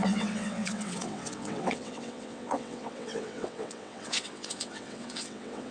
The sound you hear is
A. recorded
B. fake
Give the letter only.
B